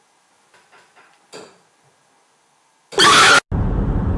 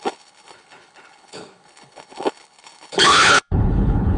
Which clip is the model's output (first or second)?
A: second